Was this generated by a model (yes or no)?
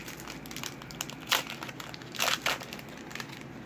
no